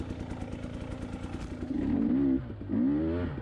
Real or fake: real